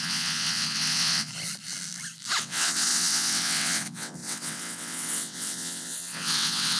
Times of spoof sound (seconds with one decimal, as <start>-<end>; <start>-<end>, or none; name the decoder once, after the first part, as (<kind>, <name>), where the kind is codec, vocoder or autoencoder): 0.0-1.3 (vocoder, WaveNeXt); 2.4-6.8